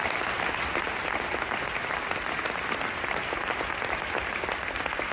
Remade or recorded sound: recorded